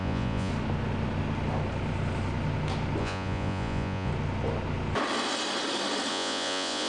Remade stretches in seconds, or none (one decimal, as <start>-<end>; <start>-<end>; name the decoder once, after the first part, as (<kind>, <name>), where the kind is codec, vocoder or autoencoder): 0.0-0.5 (vocoder, Vocos); 3.0-4.1; 6.1-6.9

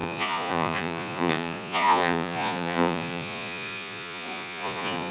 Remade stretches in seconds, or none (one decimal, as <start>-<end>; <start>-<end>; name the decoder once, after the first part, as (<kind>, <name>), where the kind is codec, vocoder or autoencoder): 0.0-5.1 (vocoder, Vocos)

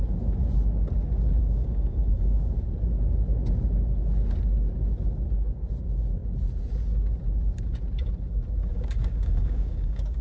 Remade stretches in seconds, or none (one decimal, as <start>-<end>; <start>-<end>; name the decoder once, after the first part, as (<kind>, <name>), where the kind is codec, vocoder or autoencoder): 1.4-2.5 (codec, DAC); 8.7-10.2

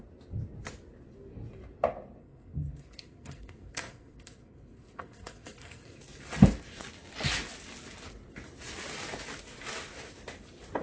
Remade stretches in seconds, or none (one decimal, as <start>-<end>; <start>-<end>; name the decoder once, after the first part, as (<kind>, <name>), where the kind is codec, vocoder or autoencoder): 2.2-6.0 (codec, SNAC)

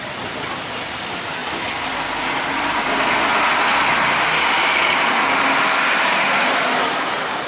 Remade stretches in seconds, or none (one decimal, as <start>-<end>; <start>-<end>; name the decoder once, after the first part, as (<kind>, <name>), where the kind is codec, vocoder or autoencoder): none

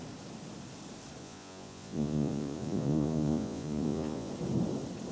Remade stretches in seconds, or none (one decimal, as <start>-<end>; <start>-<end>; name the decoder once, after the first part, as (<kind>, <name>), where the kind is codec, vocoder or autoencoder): 1.2-4.3 (vocoder, Vocos)